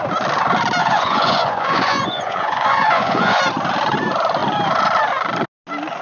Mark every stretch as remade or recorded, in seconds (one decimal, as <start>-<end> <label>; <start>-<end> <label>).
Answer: 0.0-0.8 recorded; 0.8-3.4 remade; 3.4-6.0 recorded